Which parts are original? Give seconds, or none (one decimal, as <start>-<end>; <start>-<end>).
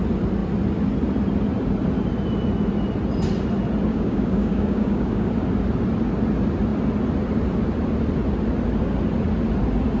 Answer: 0.0-3.9; 5.3-10.0